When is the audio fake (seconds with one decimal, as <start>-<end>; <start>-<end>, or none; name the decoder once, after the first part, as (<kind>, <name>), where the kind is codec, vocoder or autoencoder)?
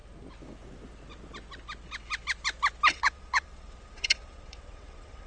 2.9-5.3 (vocoder, WaveNeXt)